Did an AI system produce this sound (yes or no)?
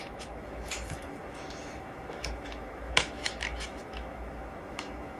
yes